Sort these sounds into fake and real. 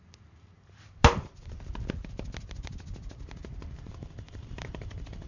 real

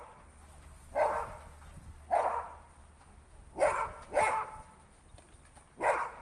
real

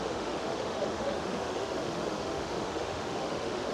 fake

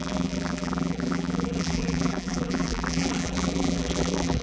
fake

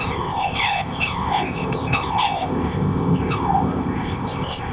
fake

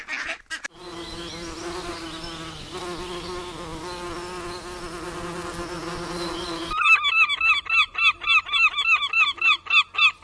real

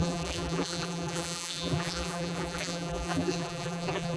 fake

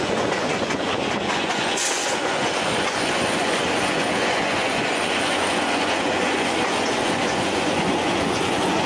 fake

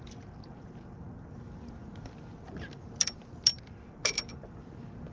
real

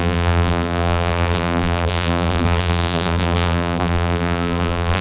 fake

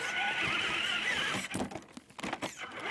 real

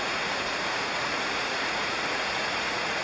fake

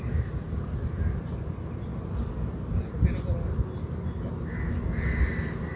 real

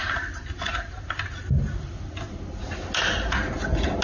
real